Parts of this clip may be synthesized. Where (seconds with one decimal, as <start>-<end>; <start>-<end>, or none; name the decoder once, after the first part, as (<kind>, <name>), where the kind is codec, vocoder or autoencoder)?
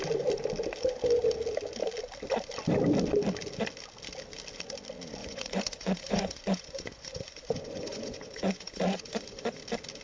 5.2-9.6 (vocoder, Vocos)